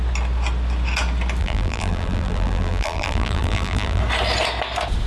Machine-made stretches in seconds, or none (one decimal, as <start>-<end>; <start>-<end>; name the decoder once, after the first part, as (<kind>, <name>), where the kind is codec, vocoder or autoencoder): 1.4-4.0 (vocoder, BigVGAN v2)